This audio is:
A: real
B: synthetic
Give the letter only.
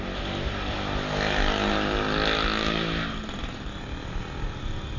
A